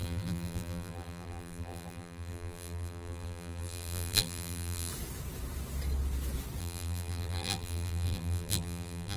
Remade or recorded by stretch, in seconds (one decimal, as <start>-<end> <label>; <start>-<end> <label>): 0.0-4.9 remade; 4.9-6.6 recorded; 6.6-9.2 remade